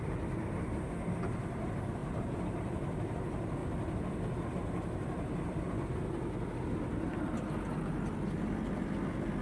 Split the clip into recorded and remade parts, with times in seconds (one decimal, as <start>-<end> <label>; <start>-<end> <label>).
0.0-2.0 recorded; 2.0-3.0 remade; 3.0-9.4 recorded